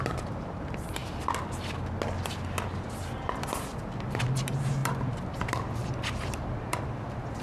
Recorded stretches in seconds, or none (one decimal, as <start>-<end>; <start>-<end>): 1.0-3.7